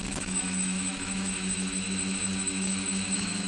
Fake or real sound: fake